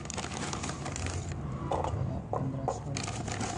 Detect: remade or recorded recorded